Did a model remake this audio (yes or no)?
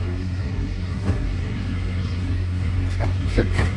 yes